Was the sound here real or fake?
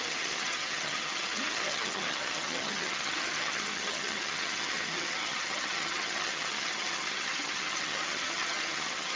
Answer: fake